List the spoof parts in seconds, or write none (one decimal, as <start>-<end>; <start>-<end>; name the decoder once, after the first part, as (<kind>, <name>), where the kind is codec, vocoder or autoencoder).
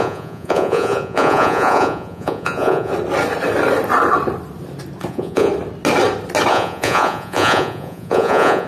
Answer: 0.0-2.9 (vocoder, Vocos); 5.1-5.5; 6.5-8.7